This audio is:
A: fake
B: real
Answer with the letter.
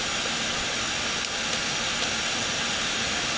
B